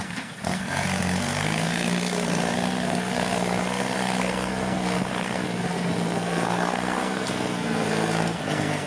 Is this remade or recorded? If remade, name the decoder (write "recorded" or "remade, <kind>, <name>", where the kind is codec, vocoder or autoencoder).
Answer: remade, codec, SNAC